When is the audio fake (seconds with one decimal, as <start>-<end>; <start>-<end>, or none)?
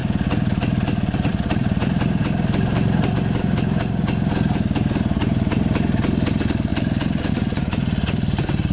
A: 1.3-2.2; 6.3-6.7; 7.3-8.7